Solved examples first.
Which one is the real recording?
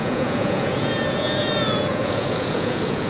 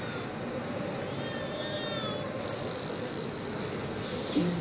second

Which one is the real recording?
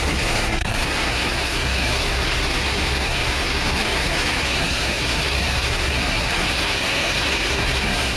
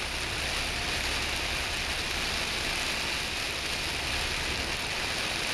second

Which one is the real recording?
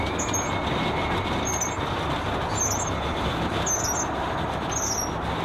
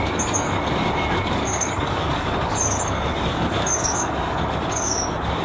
first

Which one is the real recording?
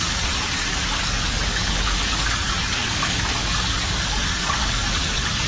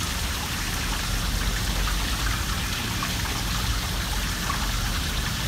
second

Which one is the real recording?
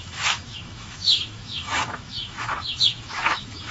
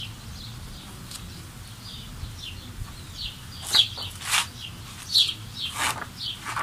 second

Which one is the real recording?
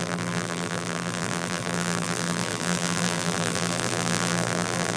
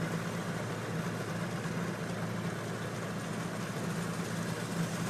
second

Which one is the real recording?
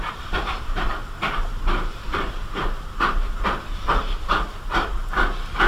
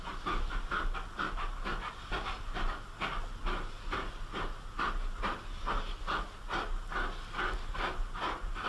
second